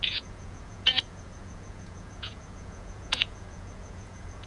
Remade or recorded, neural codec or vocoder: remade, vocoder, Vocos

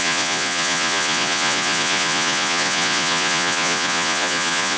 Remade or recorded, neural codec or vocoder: remade, vocoder, Vocos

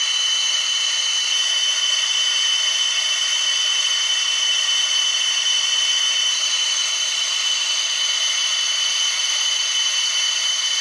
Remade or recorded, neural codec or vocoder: recorded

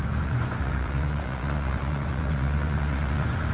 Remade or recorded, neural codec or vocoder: remade, vocoder, Vocos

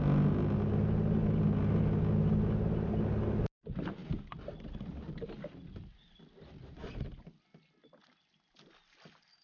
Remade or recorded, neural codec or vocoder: recorded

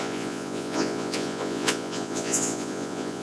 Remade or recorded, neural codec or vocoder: remade, vocoder, Vocos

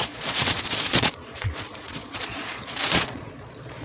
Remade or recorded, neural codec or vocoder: remade, vocoder, Vocos